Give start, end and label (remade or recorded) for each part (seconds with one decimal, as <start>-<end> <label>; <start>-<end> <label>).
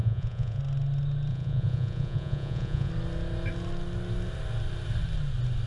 0.0-0.6 remade; 0.6-1.3 recorded; 1.3-2.9 remade; 2.9-5.7 recorded